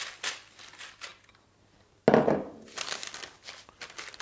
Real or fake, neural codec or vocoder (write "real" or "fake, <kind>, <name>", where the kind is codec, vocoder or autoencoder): real